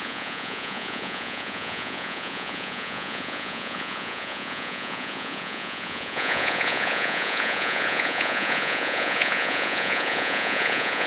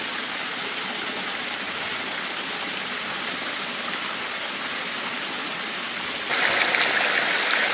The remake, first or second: first